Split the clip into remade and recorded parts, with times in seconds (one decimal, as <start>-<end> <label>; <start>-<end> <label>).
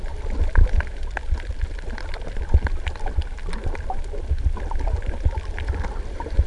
0.0-6.5 recorded